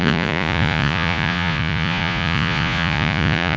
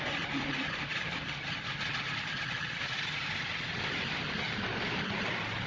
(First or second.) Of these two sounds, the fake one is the first